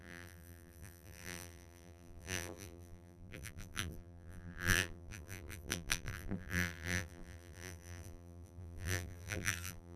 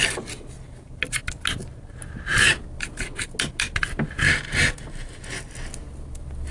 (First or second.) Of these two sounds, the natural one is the second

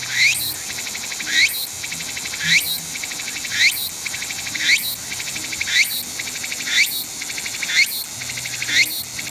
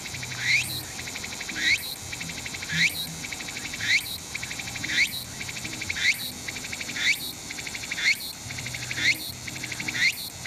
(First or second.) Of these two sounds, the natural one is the first